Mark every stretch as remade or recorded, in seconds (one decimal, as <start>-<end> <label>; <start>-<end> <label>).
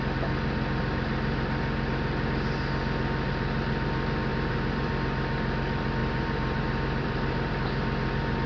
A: 0.0-4.3 recorded; 4.3-4.9 remade; 4.9-6.0 recorded; 6.0-7.5 remade; 7.5-8.5 recorded